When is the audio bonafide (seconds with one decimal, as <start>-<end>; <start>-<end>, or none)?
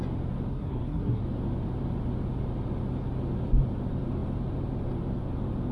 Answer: 0.0-0.5; 1.2-5.7